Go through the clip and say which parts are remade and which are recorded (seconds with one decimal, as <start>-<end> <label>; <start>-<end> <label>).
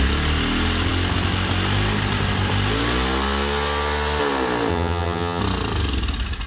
0.0-4.7 recorded; 4.7-5.4 remade; 5.4-6.5 recorded